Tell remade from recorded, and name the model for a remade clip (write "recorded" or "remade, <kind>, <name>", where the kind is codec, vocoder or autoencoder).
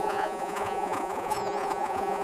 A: remade, vocoder, Vocos